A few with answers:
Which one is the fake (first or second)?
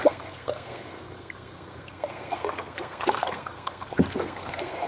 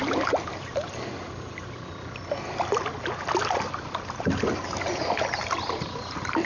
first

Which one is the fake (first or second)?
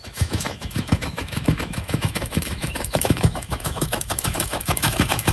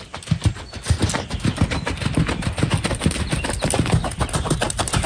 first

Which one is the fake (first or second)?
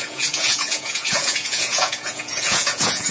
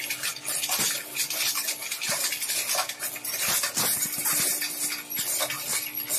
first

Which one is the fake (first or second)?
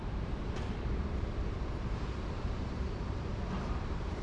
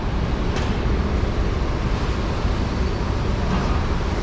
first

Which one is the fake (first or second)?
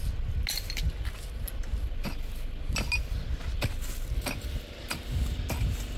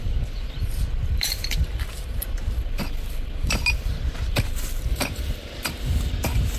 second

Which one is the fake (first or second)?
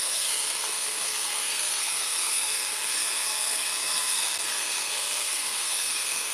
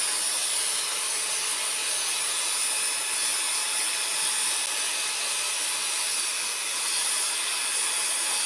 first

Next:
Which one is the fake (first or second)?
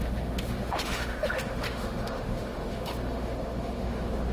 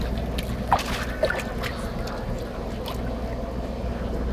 first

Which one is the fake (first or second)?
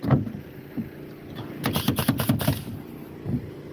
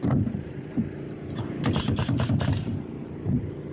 second